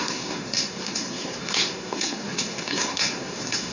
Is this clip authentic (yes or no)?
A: no